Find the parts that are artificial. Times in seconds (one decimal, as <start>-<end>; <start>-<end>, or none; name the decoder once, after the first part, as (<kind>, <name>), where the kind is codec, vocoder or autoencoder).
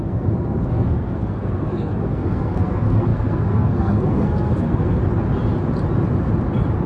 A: 0.0-5.0 (codec, SNAC)